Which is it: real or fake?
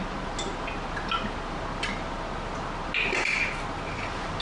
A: real